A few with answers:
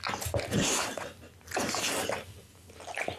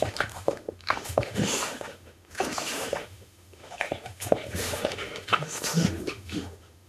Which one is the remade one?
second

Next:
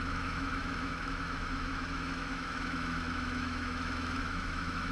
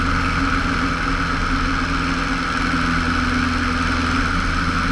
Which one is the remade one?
first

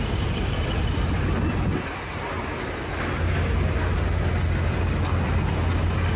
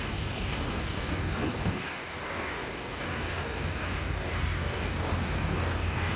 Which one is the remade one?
second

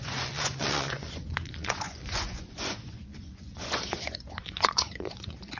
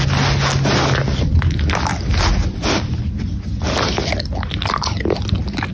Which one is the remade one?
first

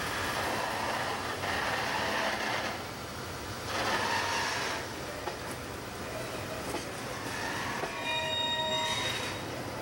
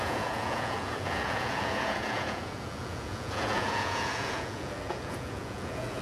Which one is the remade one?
second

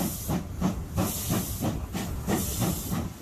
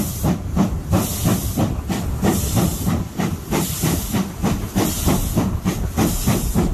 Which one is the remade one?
second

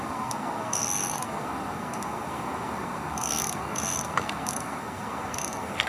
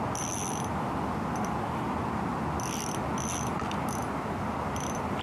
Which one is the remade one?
first